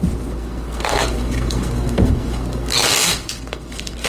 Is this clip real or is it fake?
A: fake